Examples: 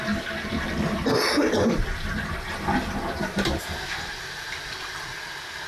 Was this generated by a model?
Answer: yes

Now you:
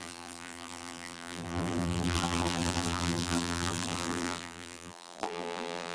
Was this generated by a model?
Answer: yes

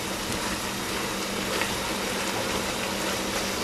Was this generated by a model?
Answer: no